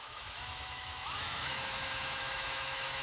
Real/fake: fake